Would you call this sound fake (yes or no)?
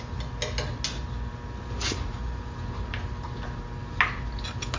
no